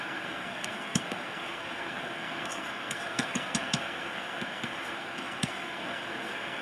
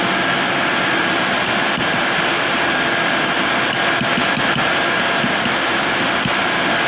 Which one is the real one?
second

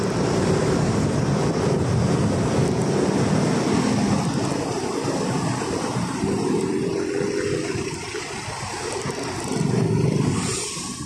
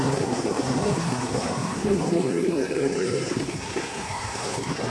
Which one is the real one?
first